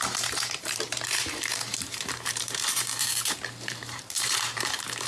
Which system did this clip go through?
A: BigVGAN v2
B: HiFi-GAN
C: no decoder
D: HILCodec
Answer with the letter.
A